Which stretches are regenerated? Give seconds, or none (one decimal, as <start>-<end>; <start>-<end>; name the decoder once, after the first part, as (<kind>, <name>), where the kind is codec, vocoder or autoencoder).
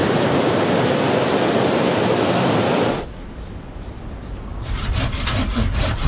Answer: 4.5-5.4 (vocoder, BigVGAN v2)